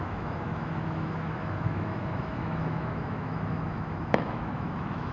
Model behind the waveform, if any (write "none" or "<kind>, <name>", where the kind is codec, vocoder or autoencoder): autoencoder, DAC-VAE